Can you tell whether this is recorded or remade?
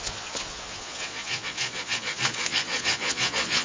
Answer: remade